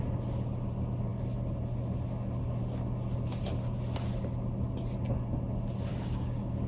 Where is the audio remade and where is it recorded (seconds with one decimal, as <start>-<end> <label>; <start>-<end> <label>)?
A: 0.0-5.9 recorded; 5.9-6.7 remade